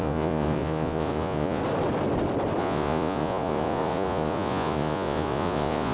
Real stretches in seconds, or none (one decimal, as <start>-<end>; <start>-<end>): 1.6-2.6